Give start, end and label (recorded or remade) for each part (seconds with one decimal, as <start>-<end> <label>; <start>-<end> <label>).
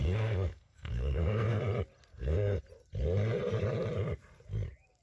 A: 0.0-1.6 remade; 1.6-2.1 recorded; 2.1-2.6 remade; 2.6-5.0 recorded